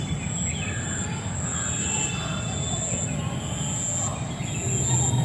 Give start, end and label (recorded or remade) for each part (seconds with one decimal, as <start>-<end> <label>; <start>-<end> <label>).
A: 0.0-1.5 recorded; 1.5-2.1 remade; 2.1-5.2 recorded